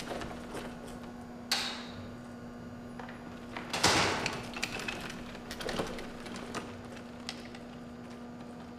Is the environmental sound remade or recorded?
recorded